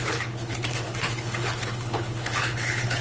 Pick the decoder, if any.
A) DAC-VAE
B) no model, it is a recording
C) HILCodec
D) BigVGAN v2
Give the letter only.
C